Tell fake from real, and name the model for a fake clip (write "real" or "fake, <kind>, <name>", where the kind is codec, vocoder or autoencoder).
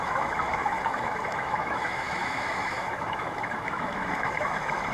fake, autoencoder, DAC-VAE